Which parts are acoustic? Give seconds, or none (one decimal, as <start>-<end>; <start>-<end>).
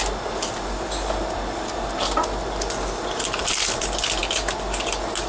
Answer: 0.0-5.3